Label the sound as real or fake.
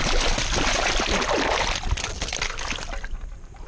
real